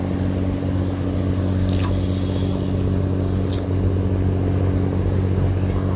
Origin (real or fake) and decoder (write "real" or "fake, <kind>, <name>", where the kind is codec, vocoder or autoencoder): real